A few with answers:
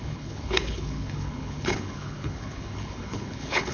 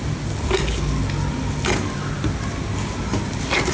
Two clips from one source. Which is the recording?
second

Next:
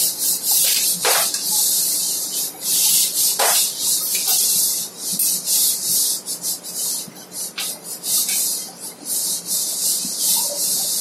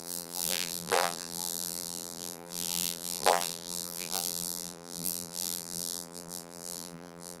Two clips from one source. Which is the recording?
first